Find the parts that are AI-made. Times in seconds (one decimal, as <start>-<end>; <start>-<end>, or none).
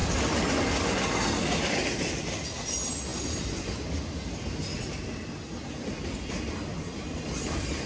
none